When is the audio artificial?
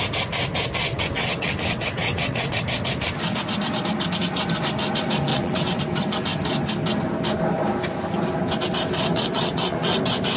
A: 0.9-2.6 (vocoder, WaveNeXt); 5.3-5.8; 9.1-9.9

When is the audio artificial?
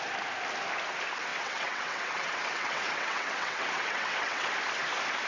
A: 1.3-4.5 (vocoder, WaveNeXt)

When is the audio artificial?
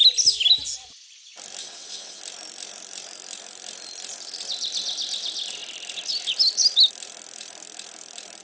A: 1.6-2.2 (vocoder, WaveNeXt)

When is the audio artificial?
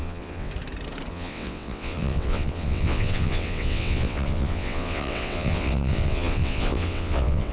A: 0.0-0.5 (vocoder, WaveNeXt); 1.1-7.5